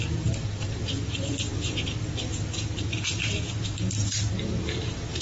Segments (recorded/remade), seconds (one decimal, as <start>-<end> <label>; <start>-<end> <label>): 0.0-5.2 remade